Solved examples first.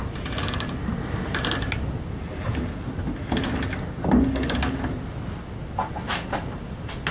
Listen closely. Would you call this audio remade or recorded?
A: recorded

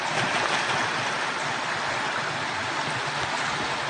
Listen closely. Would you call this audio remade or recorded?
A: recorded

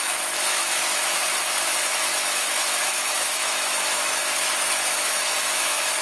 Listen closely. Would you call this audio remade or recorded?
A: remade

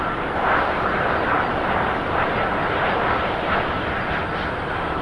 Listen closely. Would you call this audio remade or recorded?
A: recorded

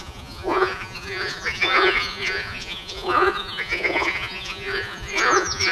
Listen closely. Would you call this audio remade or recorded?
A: remade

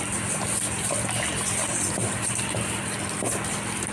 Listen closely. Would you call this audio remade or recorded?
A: recorded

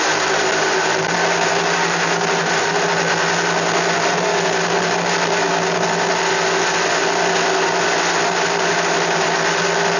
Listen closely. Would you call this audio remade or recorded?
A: recorded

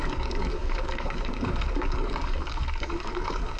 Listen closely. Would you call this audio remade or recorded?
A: remade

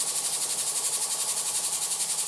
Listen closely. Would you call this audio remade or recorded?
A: recorded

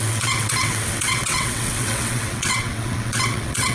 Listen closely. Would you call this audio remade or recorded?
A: remade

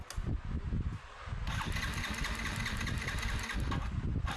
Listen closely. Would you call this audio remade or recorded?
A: recorded